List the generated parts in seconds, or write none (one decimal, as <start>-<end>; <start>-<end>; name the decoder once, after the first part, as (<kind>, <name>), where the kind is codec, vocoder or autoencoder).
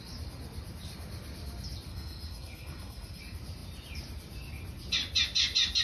1.9-3.2 (codec, SNAC)